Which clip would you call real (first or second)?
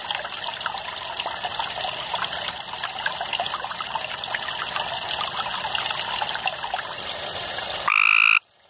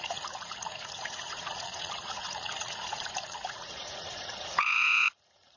first